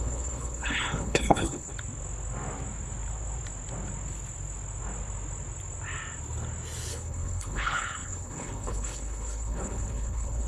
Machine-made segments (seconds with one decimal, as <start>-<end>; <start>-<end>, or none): 0.0-1.7; 6.9-10.5